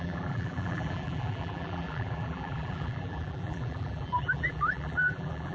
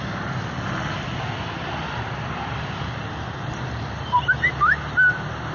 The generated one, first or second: first